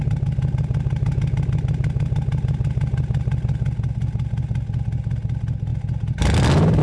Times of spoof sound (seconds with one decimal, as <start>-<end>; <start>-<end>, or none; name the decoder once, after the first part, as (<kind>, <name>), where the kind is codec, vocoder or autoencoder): none

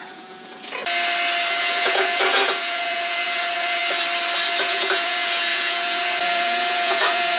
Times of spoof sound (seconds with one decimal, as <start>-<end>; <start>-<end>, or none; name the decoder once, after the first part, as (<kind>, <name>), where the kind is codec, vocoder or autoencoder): 0.0-0.8 (vocoder, Vocos); 1.6-3.8; 4.6-7.4

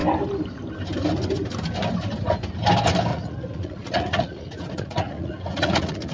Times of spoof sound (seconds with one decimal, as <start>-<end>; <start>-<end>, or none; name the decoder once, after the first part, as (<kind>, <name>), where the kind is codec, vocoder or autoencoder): 3.1-6.1 (vocoder, Vocos)